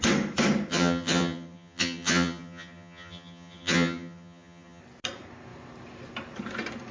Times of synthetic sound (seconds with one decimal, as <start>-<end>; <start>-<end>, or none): 0.7-4.8